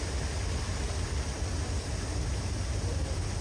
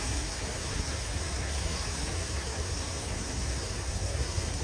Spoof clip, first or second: second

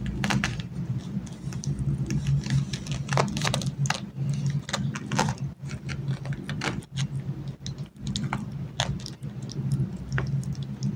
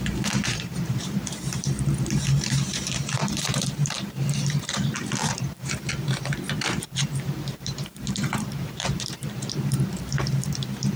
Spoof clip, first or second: second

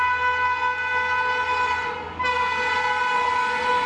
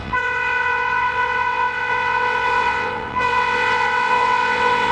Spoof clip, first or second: second